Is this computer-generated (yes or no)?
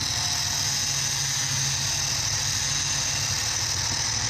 no